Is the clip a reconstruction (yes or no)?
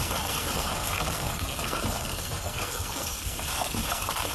yes